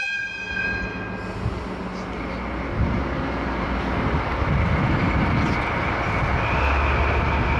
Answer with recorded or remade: recorded